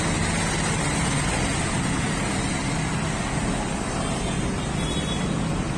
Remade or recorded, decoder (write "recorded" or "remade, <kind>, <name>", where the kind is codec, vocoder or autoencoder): recorded